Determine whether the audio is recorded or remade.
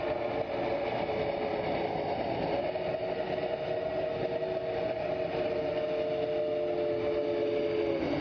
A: recorded